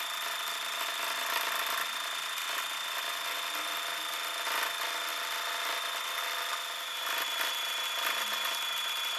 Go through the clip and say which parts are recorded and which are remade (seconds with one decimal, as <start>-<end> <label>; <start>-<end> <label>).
0.0-9.2 recorded